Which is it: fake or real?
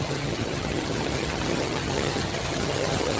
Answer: fake